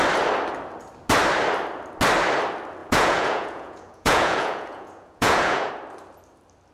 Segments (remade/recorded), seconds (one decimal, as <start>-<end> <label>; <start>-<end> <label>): 0.0-2.8 recorded; 2.8-5.7 remade; 5.7-6.7 recorded